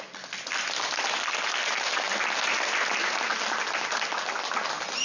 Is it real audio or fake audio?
real